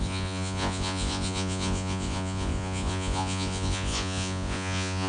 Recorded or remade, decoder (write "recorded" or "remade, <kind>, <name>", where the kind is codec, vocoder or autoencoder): remade, vocoder, Vocos